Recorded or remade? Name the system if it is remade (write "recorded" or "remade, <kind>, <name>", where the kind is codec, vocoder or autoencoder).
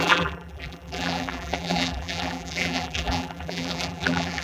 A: remade, vocoder, BigVGAN v2